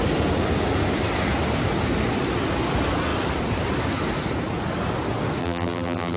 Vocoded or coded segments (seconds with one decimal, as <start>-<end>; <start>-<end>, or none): 5.4-6.2